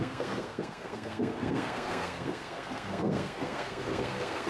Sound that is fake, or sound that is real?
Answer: fake